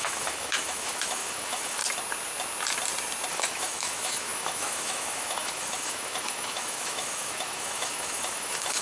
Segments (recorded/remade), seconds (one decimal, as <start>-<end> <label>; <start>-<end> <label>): 0.0-1.8 remade; 1.8-3.3 recorded; 3.3-8.8 remade